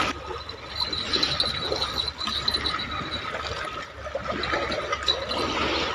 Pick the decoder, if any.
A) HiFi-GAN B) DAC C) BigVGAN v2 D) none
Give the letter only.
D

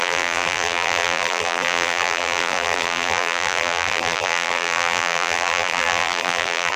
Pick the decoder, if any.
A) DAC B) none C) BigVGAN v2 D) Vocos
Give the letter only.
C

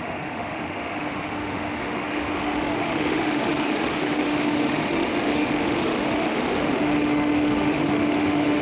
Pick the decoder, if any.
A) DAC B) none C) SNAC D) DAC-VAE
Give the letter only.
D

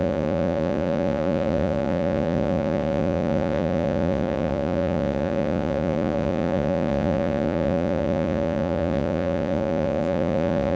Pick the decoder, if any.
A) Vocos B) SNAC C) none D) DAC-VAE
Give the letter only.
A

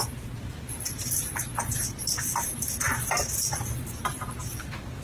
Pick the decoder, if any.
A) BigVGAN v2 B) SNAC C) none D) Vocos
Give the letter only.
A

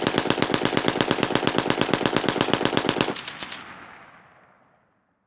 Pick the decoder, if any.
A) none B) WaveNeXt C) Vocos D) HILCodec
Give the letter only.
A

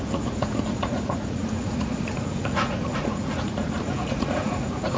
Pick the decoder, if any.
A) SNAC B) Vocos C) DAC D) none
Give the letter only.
B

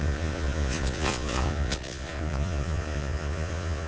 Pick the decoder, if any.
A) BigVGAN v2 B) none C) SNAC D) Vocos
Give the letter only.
D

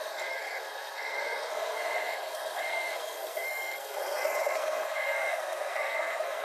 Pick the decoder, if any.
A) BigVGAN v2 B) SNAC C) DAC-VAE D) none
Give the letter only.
B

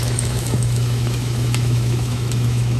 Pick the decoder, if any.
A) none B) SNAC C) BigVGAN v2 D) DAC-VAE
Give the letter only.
D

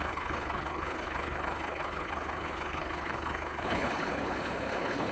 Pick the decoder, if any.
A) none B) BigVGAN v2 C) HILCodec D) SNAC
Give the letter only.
C